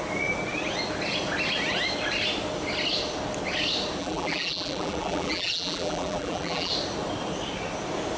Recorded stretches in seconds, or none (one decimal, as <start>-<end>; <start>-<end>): 0.0-4.0; 6.7-8.2